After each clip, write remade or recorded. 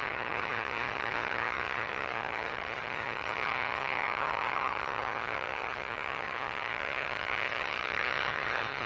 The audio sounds remade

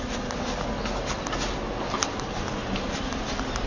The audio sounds recorded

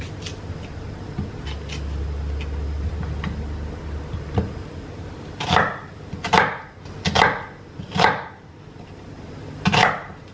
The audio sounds recorded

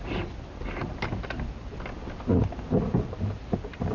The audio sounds recorded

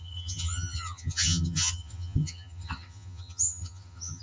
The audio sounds remade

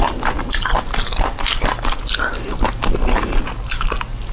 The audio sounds recorded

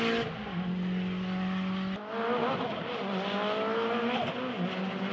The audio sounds recorded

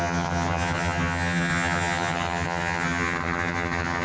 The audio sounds remade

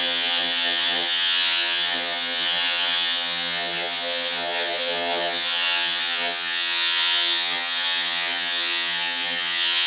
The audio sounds remade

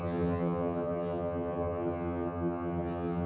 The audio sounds remade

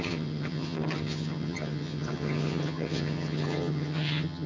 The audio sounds remade